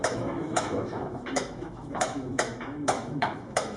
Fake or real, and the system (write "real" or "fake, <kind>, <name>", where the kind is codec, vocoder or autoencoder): fake, autoencoder, DAC-VAE